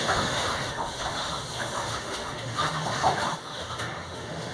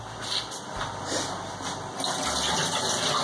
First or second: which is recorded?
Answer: second